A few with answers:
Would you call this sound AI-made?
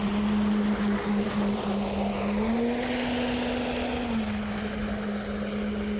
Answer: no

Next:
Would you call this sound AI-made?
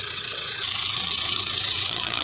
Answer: yes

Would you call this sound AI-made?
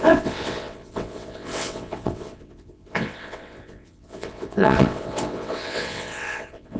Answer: yes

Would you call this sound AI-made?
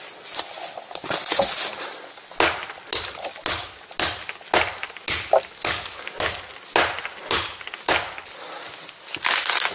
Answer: no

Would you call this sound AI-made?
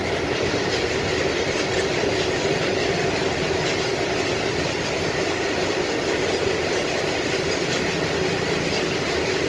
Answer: no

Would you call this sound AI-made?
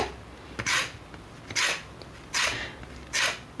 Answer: no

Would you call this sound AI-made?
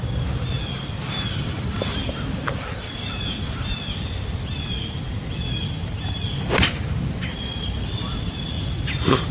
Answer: no